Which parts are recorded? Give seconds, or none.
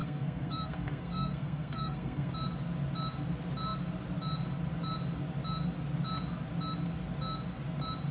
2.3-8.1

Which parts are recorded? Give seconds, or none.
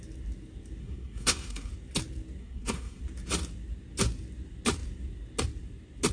0.0-0.8; 1.7-2.4; 3.0-6.1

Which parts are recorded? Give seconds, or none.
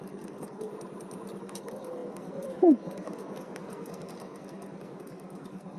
0.7-1.4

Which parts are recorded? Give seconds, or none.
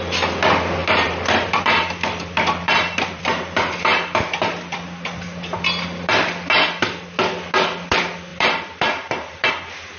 0.0-0.8; 3.2-8.3; 9.5-10.0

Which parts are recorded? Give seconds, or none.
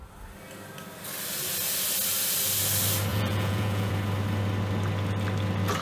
0.0-3.1; 3.9-5.8